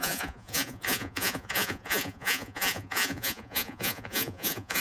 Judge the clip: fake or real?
fake